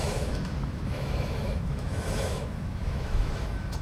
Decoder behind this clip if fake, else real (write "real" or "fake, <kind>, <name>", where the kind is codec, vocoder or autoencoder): fake, autoencoder, DAC-VAE